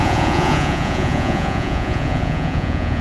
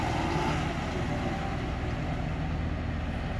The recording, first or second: second